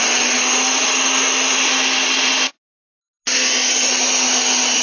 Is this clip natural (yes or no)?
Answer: yes